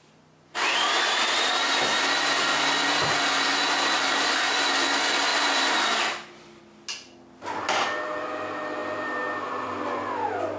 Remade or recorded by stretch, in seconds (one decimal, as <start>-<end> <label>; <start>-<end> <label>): 0.0-2.5 recorded; 2.5-4.3 remade; 4.3-5.3 recorded; 5.3-6.6 remade; 6.6-8.8 recorded; 8.8-9.8 remade; 9.8-10.6 recorded